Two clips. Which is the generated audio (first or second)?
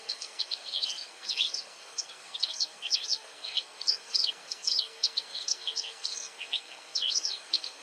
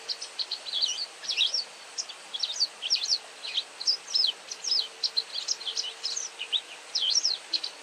first